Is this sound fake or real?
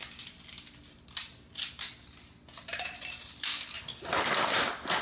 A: real